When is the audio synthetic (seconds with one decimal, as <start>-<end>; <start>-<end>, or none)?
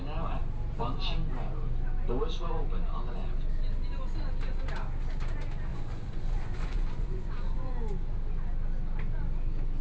5.7-7.7